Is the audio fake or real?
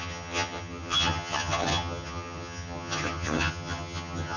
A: fake